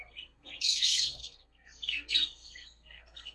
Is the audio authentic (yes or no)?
no